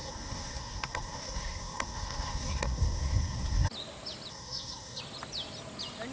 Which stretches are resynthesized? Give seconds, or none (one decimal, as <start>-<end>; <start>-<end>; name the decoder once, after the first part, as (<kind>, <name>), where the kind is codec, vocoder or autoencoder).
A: 0.0-3.7 (codec, SNAC); 4.3-5.0

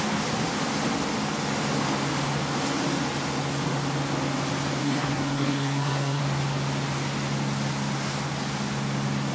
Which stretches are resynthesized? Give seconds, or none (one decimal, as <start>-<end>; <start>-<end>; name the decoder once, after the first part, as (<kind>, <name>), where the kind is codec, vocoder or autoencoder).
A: 4.8-6.2 (codec, SNAC)

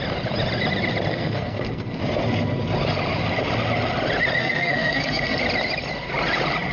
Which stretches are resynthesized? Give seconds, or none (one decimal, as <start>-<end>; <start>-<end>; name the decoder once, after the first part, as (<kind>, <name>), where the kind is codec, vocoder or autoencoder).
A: 1.1-2.0 (codec, SNAC); 4.4-5.4